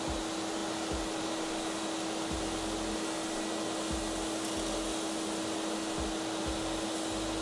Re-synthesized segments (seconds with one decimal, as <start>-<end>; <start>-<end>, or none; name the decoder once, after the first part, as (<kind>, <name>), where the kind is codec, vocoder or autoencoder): none

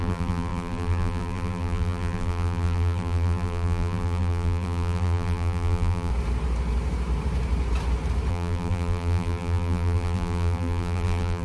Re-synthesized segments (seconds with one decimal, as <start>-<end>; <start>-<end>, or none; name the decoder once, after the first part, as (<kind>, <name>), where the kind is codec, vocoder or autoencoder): 0.0-6.1 (vocoder, BigVGAN v2); 8.3-11.4

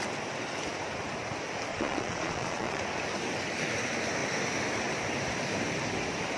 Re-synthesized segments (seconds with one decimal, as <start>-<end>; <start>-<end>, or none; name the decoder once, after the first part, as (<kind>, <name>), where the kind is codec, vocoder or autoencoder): 1.7-2.8 (vocoder, Vocos)